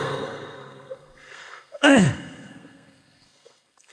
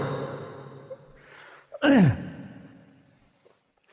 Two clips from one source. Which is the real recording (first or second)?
second